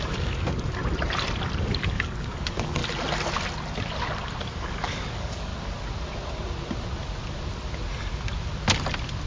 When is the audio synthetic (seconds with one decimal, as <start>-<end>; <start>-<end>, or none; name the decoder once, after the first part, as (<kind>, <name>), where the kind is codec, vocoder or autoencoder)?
0.0-0.8 (codec, DAC); 1.6-2.8; 4.4-5.5